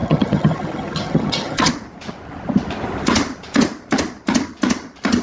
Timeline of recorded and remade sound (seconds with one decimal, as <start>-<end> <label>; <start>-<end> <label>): 0.0-1.7 remade; 1.7-5.2 recorded